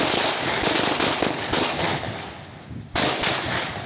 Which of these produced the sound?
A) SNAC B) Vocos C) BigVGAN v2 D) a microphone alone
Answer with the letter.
D